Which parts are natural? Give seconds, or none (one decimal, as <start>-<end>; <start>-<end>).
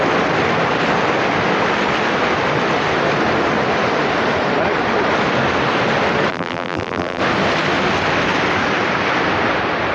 0.0-6.3; 7.2-9.9